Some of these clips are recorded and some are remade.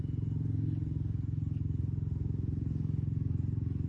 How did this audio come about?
recorded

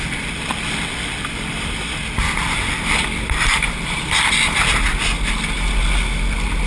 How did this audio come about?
recorded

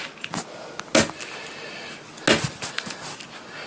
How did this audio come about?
recorded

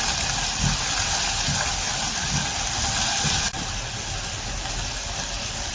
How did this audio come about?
recorded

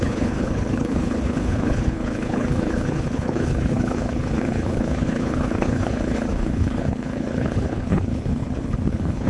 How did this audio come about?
remade